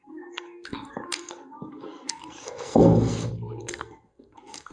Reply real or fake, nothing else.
fake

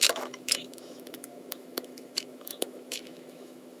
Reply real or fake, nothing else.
fake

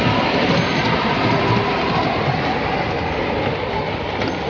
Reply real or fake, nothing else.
real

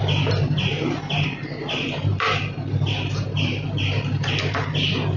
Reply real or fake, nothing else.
real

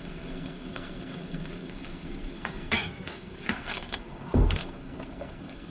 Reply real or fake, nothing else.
fake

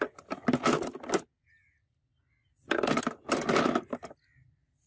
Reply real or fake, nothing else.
real